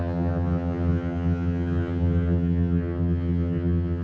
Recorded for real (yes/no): no